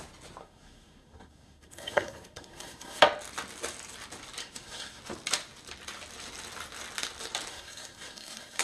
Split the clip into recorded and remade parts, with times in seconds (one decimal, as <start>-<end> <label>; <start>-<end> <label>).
0.0-0.4 recorded; 0.4-3.0 remade; 3.0-4.4 recorded; 4.4-5.0 remade; 5.0-7.5 recorded; 7.5-8.6 remade